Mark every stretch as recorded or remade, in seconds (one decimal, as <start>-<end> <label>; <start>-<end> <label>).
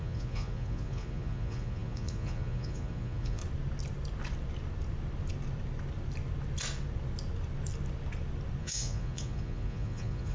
0.0-3.4 remade; 3.4-8.6 recorded; 8.6-10.3 remade